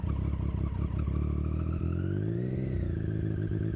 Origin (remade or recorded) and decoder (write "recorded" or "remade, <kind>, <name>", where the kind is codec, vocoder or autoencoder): recorded